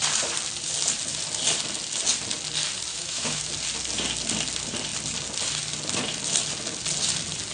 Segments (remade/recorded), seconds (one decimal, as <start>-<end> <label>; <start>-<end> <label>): 0.0-2.9 recorded; 2.9-3.5 remade; 3.5-7.5 recorded